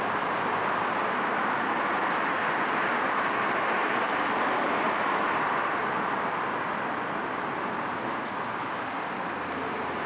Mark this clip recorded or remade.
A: recorded